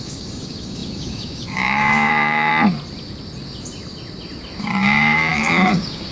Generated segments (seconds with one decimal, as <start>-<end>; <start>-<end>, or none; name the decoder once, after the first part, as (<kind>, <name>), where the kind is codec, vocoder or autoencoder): 0.0-2.5 (codec, DAC); 4.6-6.1